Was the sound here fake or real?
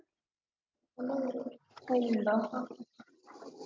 real